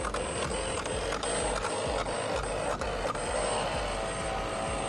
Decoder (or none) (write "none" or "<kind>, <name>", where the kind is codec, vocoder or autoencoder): none